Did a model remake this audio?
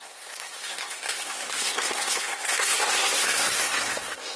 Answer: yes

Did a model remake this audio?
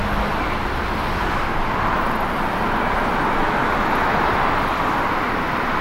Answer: no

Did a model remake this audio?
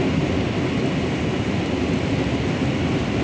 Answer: no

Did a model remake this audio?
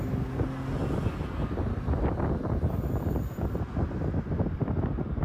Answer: no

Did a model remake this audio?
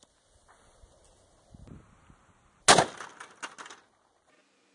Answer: no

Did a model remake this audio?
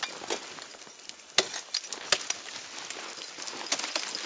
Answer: no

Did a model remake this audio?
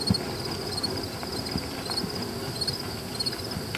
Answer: no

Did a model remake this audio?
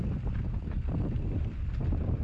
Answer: no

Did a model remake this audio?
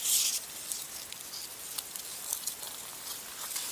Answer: no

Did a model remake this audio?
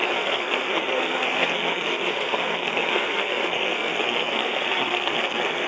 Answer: yes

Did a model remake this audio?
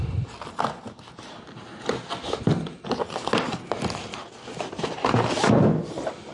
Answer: no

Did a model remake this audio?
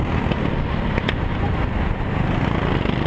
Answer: no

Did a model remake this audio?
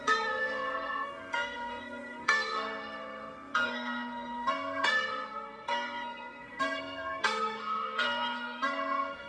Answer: yes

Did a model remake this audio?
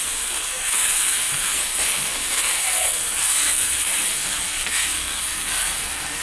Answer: yes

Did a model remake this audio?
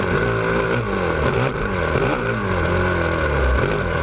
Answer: no